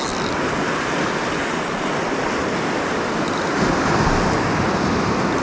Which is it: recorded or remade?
recorded